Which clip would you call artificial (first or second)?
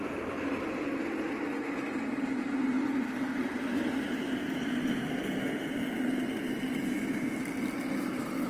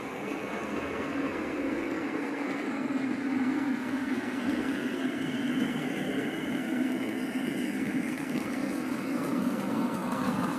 second